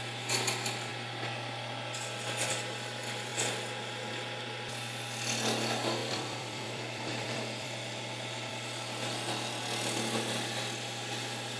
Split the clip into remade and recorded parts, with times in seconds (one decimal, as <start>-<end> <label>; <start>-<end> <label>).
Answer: 0.0-6.0 recorded; 6.0-8.5 remade; 8.5-11.6 recorded